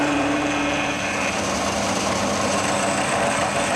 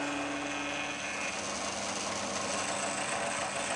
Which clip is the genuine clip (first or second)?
second